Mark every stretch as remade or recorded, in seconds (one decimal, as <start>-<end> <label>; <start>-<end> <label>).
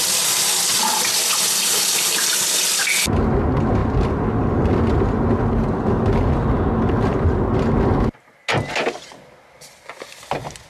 0.0-10.7 recorded